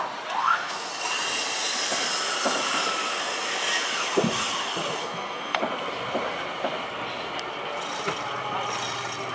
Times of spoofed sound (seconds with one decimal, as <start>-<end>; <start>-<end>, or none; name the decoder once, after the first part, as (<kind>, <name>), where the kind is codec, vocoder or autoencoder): 0.4-0.9 (codec, SNAC); 5.0-5.6